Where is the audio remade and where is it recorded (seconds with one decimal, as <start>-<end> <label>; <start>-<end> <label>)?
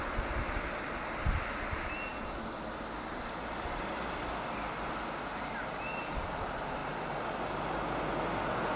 0.0-8.8 recorded